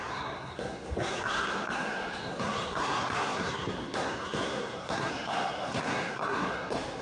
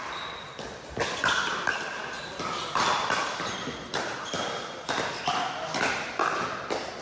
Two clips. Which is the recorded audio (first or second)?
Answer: second